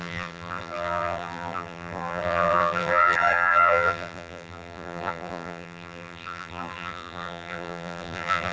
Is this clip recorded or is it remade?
remade